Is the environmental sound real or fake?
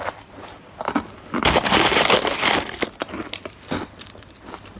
real